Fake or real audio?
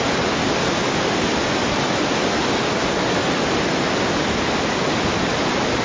real